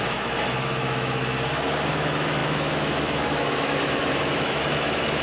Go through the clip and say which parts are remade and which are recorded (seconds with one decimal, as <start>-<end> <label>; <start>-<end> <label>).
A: 0.0-1.2 remade; 1.2-1.9 recorded; 1.9-5.2 remade